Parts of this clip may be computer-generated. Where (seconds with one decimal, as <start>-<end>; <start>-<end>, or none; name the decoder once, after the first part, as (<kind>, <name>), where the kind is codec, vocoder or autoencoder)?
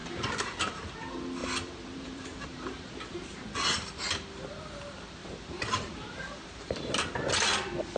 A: 0.0-0.6 (vocoder, BigVGAN v2); 1.4-3.4; 5.2-6.9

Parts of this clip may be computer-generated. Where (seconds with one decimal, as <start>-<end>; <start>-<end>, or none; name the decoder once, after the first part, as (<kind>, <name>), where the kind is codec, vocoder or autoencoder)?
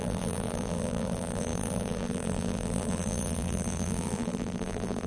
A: 0.0-5.1 (vocoder, BigVGAN v2)